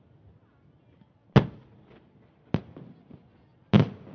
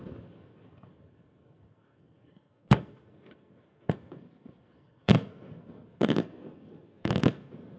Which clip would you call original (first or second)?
first